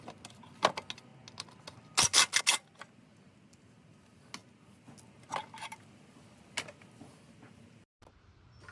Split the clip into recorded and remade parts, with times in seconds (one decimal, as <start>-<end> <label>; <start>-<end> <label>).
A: 0.0-8.7 recorded